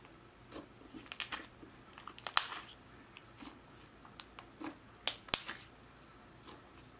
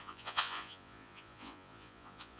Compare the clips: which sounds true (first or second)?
first